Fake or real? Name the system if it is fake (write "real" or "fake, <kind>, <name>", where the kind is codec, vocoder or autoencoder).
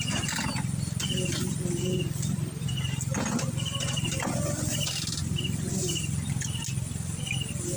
real